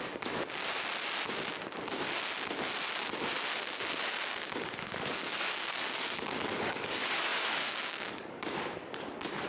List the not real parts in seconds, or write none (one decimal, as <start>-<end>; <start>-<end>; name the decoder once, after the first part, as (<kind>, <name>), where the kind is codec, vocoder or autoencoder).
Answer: 0.0-0.6 (codec, DAC); 4.6-9.5